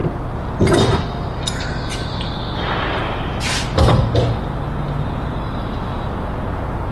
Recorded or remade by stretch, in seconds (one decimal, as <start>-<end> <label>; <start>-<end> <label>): 0.0-6.9 recorded